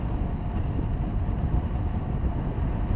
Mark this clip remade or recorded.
recorded